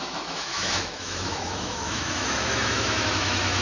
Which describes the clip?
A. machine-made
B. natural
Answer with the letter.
A